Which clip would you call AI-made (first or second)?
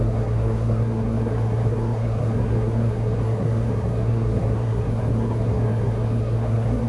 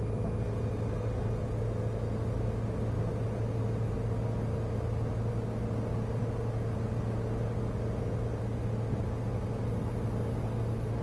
first